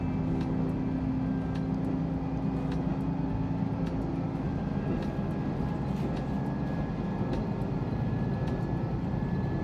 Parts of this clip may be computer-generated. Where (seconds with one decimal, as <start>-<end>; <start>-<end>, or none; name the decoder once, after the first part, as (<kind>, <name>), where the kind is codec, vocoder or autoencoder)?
none